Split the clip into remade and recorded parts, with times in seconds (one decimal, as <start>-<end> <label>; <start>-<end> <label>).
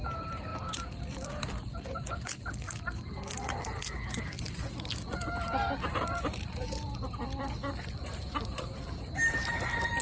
0.0-10.0 recorded